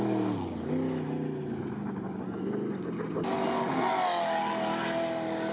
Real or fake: real